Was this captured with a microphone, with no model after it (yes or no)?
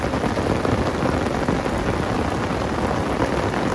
yes